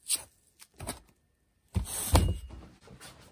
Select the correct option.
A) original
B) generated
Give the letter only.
A